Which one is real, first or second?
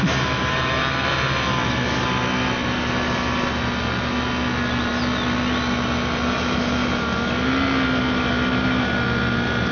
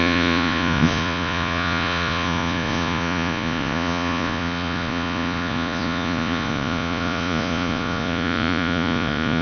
first